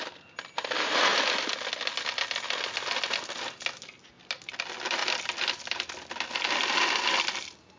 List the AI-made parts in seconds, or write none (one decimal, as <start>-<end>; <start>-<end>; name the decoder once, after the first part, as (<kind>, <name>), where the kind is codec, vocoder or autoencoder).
none